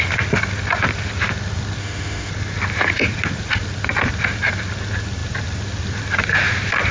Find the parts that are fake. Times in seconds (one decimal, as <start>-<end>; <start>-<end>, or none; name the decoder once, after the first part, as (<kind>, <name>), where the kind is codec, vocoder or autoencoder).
1.8-2.3 (autoencoder, DAC-VAE)